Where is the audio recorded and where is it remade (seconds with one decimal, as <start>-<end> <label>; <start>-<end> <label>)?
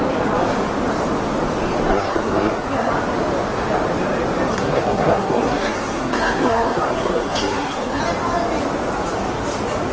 0.0-1.9 recorded; 1.9-2.9 remade; 2.9-4.5 recorded; 4.5-8.0 remade; 8.0-9.9 recorded